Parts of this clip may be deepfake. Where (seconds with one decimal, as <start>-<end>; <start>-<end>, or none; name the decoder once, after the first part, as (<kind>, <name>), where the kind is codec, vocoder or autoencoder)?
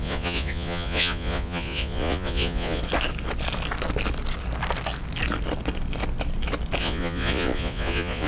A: 0.0-2.8 (vocoder, Vocos); 6.8-8.3